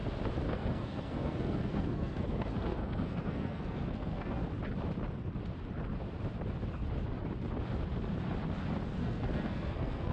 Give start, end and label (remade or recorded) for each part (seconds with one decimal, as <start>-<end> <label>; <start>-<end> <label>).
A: 0.0-0.5 recorded; 0.5-4.4 remade; 4.4-9.0 recorded; 9.0-10.1 remade

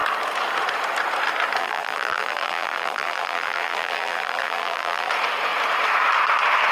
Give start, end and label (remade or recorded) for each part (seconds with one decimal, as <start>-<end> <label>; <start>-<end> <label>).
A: 0.0-1.6 recorded; 1.6-5.1 remade; 5.1-6.7 recorded